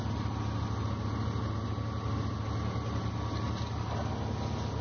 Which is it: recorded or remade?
recorded